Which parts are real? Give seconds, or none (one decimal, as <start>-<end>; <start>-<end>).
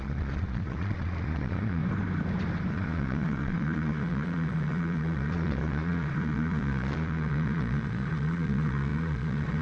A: 1.8-2.7